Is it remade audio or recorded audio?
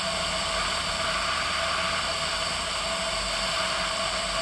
recorded